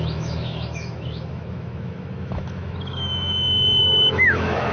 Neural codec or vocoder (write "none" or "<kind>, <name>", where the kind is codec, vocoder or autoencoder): autoencoder, DAC-VAE